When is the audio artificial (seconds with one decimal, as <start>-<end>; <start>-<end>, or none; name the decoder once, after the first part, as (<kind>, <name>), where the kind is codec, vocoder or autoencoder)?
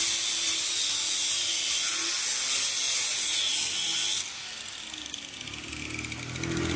none